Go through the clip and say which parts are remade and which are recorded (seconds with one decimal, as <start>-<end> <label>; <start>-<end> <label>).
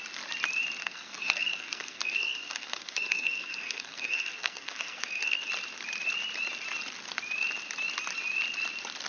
0.0-0.8 recorded; 0.8-5.5 remade; 5.5-9.1 recorded